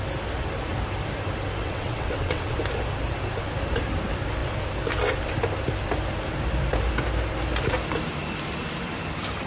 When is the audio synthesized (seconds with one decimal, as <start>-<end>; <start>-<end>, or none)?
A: 1.6-2.6